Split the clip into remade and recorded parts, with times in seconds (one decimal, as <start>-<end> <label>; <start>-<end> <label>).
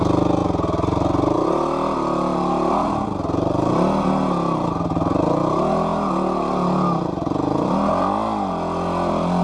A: 0.0-9.4 recorded